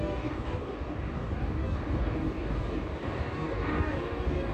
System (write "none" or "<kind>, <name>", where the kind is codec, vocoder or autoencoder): codec, DAC